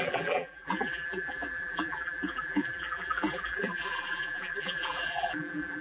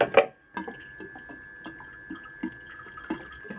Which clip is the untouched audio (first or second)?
second